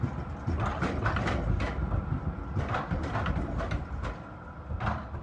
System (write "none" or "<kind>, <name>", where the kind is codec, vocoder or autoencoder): none